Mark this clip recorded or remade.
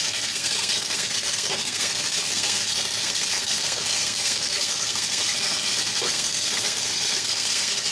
remade